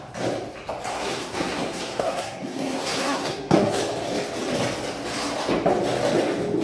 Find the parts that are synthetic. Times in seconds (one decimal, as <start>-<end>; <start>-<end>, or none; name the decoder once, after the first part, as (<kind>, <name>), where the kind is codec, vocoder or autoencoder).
0.9-3.8 (codec, SNAC)